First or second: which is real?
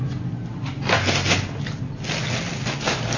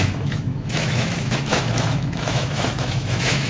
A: first